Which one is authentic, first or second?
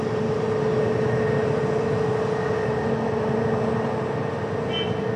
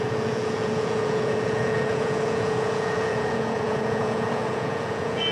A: first